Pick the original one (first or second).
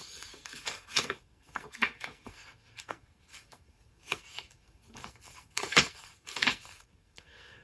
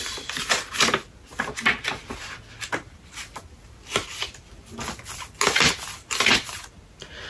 second